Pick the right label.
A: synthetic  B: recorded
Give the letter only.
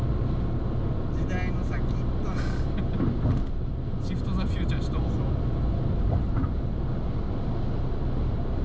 B